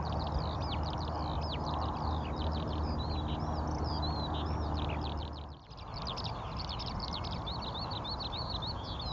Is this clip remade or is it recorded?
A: recorded